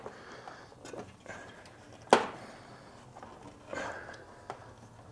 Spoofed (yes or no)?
no